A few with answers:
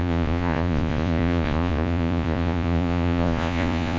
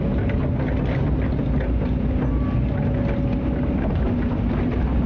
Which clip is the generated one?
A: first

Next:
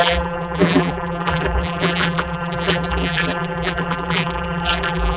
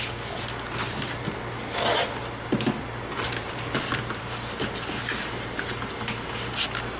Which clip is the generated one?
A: first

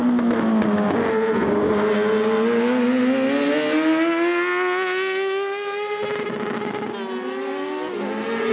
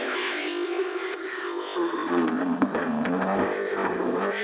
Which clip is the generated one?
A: second